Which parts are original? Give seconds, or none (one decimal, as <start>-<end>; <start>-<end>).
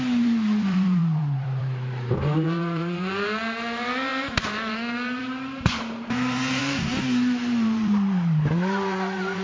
none